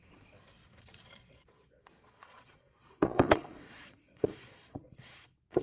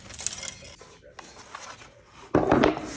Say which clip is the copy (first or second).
first